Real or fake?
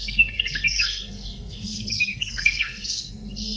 fake